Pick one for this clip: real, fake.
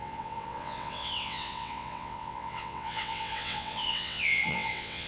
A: fake